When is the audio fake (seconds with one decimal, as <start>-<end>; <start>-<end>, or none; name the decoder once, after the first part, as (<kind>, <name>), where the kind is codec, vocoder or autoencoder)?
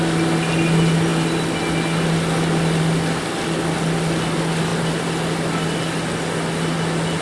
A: none